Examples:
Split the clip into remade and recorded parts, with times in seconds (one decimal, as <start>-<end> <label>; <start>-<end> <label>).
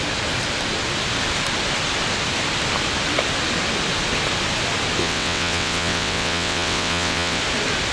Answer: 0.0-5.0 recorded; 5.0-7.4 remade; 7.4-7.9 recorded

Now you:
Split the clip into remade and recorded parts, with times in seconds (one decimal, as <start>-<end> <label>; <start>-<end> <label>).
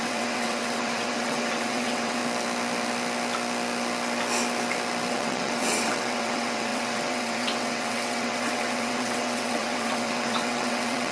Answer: 0.0-2.2 remade; 2.2-5.1 recorded; 5.1-11.1 remade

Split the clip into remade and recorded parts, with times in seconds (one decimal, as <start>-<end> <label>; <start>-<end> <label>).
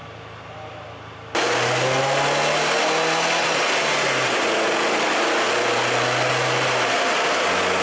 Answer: 0.0-7.8 recorded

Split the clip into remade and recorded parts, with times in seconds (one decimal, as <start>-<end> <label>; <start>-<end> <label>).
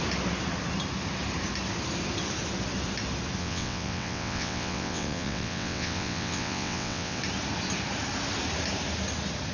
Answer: 0.0-3.4 recorded; 3.4-7.2 remade; 7.2-9.5 recorded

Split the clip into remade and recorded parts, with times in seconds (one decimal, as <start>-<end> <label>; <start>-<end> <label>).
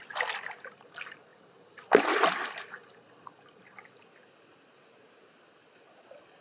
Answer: 0.0-6.4 recorded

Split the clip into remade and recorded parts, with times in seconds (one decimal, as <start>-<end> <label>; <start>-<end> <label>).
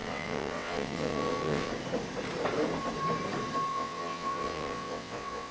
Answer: 0.0-1.7 remade; 1.7-3.7 recorded; 3.7-5.5 remade